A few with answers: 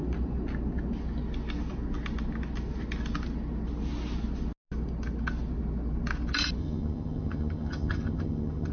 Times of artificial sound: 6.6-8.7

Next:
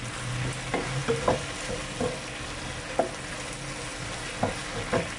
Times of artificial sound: none

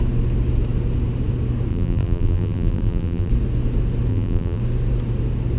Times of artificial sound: 1.7-3.3; 4.1-4.6

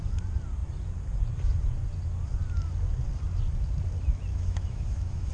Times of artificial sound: 4.3-5.3

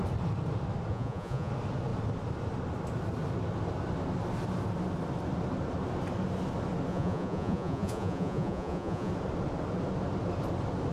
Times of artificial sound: 0.9-1.5; 6.9-9.1